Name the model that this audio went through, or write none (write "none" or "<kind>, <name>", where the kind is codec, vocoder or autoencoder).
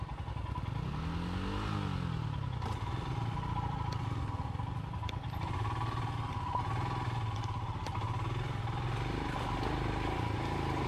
none